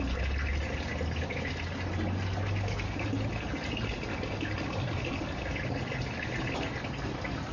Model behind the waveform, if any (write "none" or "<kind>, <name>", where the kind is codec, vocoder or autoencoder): none